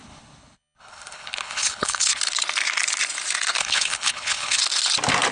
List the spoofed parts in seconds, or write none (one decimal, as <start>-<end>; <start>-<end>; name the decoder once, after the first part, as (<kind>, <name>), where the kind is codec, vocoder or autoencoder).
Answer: 0.0-2.2 (codec, HILCodec); 3.6-4.6